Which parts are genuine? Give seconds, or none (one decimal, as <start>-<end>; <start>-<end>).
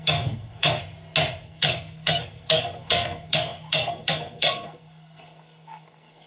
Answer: 0.8-1.4